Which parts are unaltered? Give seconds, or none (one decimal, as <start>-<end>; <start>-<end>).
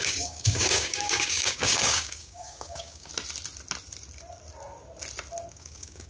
3.1-5.5